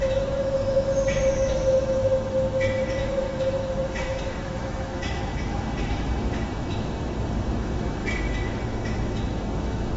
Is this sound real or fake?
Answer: fake